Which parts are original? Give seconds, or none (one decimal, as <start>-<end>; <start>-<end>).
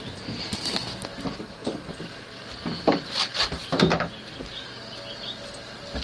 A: 0.0-6.0